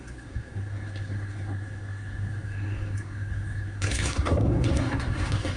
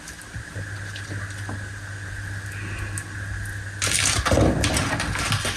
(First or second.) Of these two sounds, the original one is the second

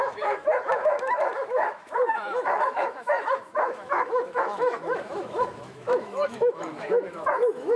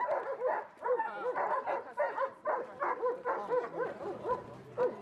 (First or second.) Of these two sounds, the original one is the second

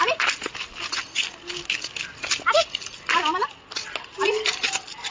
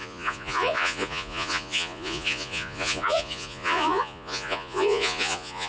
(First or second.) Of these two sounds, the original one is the first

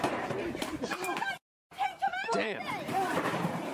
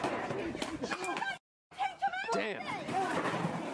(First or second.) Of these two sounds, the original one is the second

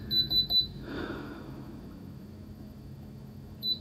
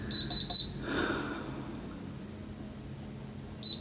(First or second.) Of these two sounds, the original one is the second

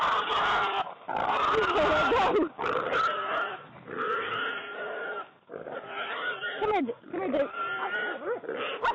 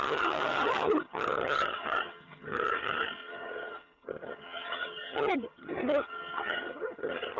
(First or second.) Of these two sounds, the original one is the first